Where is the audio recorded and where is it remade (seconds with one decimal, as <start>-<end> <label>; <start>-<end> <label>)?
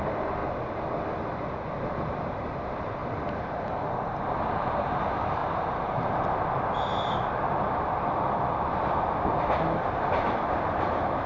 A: 0.0-0.4 remade; 0.4-1.6 recorded; 1.6-3.0 remade; 3.0-4.7 recorded; 4.7-5.4 remade; 5.4-9.6 recorded; 9.6-11.3 remade